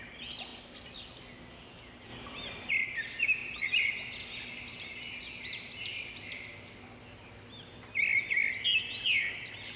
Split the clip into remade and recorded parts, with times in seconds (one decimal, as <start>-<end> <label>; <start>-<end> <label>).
0.0-9.8 recorded